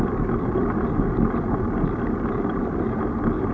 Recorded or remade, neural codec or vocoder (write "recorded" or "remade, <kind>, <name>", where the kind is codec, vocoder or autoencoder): recorded